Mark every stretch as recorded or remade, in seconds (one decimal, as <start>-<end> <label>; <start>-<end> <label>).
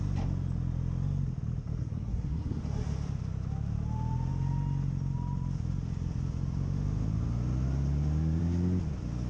0.0-1.8 recorded; 1.8-2.6 remade; 2.6-9.3 recorded